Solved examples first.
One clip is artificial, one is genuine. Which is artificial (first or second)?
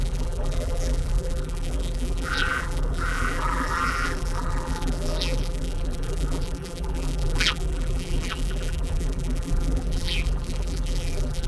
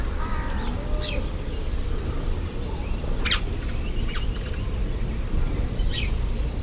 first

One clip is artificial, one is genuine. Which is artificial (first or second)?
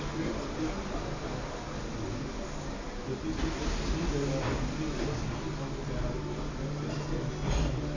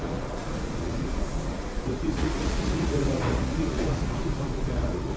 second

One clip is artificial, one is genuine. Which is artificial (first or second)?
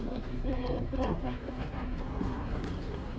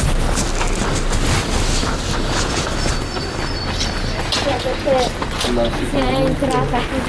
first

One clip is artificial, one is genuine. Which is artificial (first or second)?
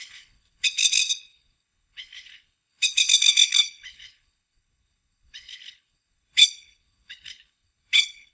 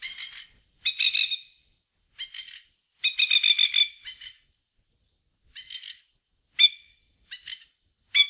first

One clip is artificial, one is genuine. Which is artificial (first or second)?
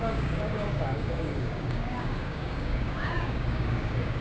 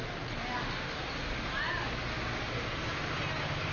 first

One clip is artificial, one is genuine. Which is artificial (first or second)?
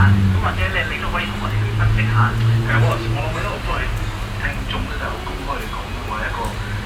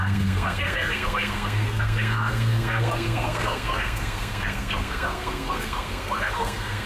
second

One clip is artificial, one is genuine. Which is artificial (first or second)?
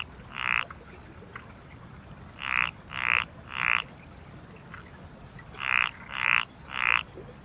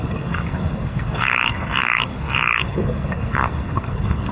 second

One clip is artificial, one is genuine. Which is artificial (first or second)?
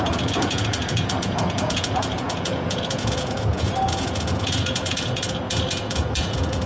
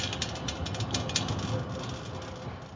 first